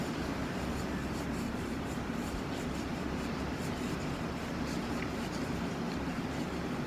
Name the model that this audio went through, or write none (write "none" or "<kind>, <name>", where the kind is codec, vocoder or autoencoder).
vocoder, BigVGAN v2